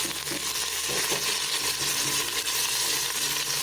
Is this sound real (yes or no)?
yes